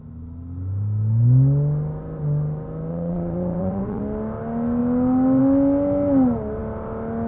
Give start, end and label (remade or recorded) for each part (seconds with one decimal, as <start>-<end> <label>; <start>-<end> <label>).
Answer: 0.0-2.9 recorded; 2.9-4.0 remade; 4.0-7.3 recorded